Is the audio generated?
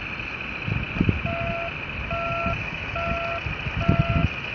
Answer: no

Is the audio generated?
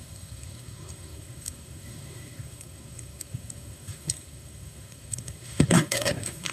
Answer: yes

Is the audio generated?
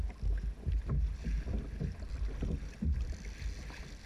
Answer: no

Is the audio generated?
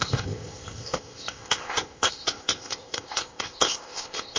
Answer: yes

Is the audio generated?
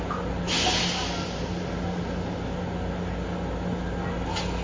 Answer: no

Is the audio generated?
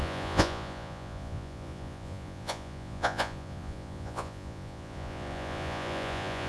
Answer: yes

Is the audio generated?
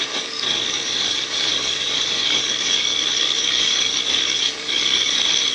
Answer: yes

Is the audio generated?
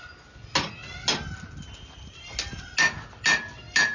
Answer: no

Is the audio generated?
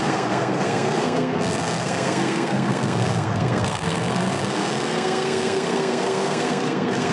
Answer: yes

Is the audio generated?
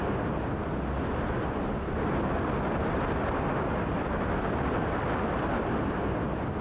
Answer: no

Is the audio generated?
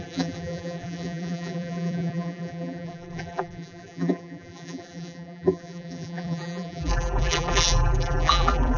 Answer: yes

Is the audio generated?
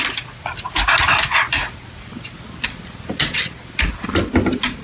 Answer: no